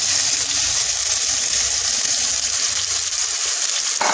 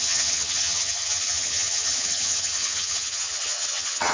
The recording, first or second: first